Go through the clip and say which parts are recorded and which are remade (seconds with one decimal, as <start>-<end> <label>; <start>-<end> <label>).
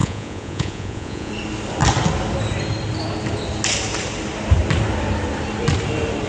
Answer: 0.0-1.3 remade; 1.3-6.3 recorded